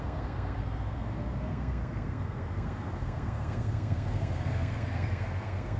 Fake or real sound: fake